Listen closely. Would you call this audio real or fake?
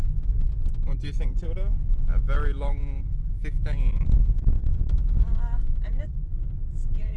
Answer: real